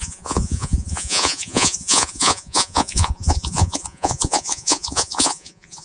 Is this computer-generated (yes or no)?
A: yes